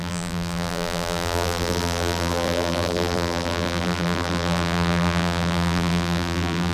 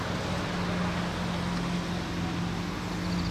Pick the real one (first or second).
second